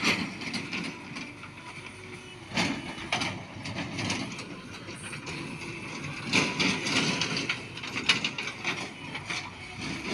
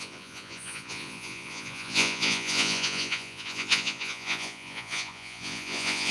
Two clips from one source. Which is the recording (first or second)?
first